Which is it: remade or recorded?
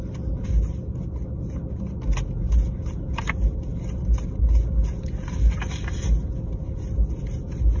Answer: recorded